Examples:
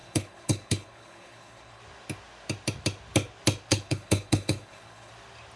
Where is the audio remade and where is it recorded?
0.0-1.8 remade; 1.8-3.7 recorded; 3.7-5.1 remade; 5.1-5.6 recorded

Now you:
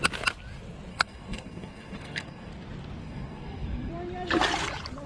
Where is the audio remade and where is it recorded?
0.0-0.9 recorded; 0.9-2.5 remade; 2.5-3.0 recorded; 3.0-3.9 remade; 3.9-5.1 recorded

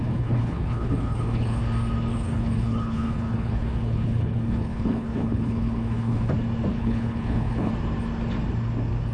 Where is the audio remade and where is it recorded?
0.0-1.6 remade; 1.6-2.1 recorded; 2.1-6.3 remade; 6.3-6.7 recorded; 6.7-7.7 remade; 7.7-9.1 recorded

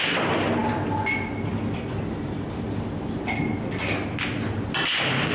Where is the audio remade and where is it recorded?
0.0-5.3 recorded

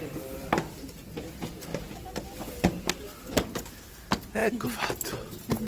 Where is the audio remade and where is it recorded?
0.0-5.7 recorded

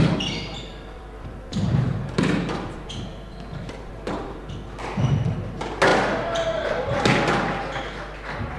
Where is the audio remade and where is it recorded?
0.0-0.7 recorded; 0.7-4.4 remade; 4.4-5.9 recorded; 5.9-6.9 remade; 6.9-8.6 recorded

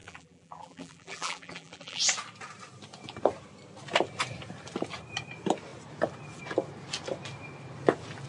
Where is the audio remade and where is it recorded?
0.0-2.0 remade; 2.0-8.3 recorded